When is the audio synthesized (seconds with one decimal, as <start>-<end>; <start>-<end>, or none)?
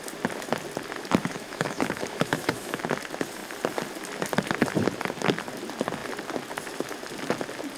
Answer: 1.2-2.8